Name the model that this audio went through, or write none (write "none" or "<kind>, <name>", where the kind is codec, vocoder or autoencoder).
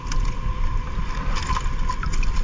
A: none